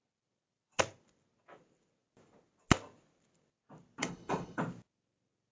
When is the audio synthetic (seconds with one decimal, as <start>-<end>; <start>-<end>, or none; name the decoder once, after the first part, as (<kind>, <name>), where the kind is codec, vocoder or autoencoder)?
4.0-4.6 (codec, HILCodec)

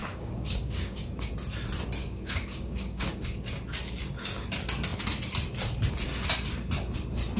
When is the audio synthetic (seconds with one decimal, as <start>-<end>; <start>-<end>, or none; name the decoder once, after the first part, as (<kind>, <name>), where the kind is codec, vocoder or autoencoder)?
0.0-1.3 (codec, DAC); 2.0-3.1

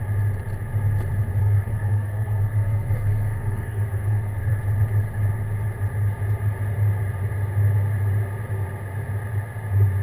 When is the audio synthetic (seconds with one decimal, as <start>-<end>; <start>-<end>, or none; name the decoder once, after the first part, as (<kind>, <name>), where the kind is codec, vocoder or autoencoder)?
1.4-4.5 (codec, SNAC)

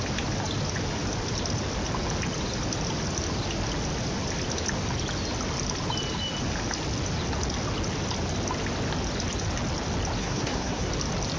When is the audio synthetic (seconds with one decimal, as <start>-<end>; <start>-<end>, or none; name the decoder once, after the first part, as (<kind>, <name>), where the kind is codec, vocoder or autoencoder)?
10.2-10.9 (codec, SNAC)

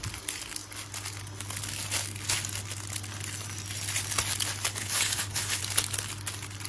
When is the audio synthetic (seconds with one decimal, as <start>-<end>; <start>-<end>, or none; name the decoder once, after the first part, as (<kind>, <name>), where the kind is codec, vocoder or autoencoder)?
4.8-5.6 (codec, HILCodec)

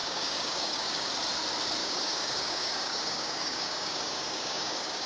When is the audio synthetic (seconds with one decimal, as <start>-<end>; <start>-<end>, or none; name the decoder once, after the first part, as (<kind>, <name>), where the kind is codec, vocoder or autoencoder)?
0.0-1.1 (codec, DAC); 1.8-5.1

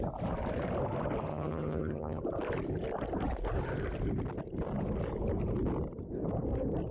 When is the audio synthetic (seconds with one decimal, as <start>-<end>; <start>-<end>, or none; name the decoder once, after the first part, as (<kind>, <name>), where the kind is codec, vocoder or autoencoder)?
1.3-2.2 (vocoder, HiFi-GAN)